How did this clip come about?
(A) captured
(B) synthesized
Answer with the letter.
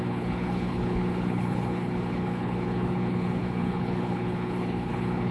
B